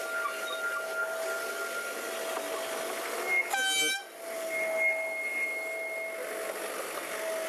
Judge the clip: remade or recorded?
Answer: recorded